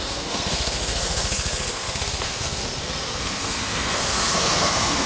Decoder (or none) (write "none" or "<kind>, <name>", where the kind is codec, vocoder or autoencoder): codec, SNAC